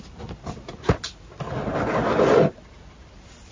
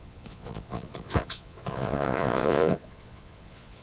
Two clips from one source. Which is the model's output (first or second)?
second